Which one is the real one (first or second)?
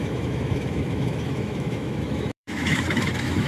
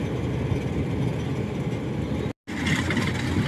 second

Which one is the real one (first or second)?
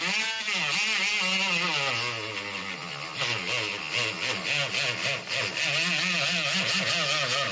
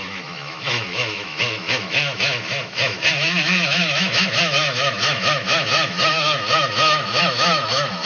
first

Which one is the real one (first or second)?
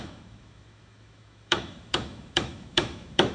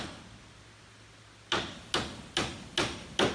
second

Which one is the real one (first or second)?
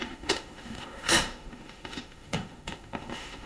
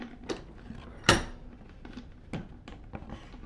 second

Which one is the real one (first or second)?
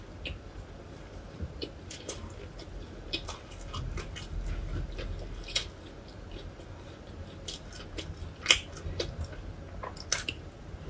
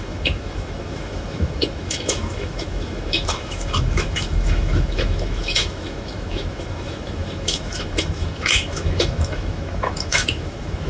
first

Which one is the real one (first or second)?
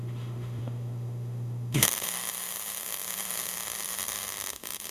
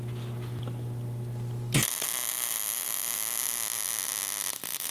second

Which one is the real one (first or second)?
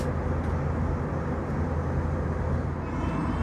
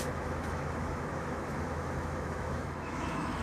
first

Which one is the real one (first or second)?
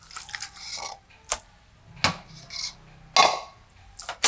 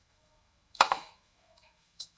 first